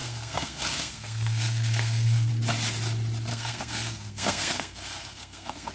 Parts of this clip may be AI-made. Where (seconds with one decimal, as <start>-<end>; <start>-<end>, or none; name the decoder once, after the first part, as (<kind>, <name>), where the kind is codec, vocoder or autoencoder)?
0.0-2.3 (codec, SNAC); 3.3-5.7